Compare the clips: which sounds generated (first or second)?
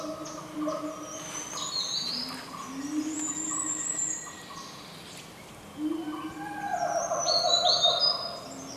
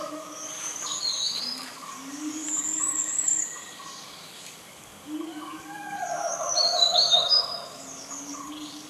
second